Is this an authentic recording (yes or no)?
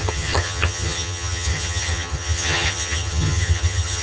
no